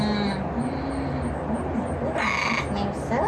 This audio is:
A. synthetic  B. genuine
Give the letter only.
B